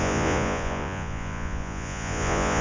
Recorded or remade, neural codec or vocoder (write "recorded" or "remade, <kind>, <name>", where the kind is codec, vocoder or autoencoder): remade, vocoder, Vocos